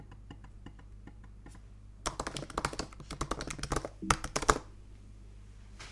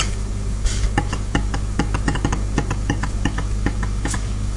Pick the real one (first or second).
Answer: first